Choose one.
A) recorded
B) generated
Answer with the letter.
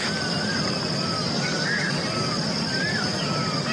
A